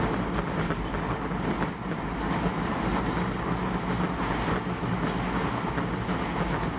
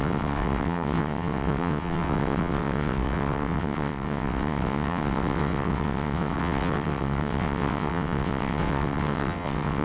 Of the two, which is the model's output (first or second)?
second